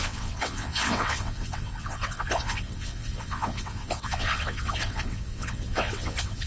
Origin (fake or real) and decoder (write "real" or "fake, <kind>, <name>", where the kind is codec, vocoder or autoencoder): fake, vocoder, WaveNeXt